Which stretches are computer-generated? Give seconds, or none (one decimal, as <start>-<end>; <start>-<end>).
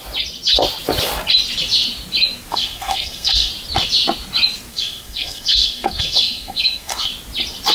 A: 2.5-3.5; 4.7-7.1